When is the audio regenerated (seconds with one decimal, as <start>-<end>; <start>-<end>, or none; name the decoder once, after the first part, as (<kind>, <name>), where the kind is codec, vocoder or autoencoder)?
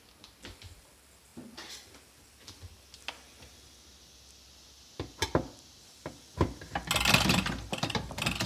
none